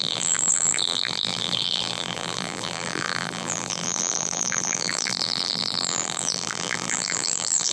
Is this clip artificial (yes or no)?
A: yes